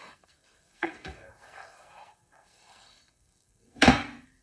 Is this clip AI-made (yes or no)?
yes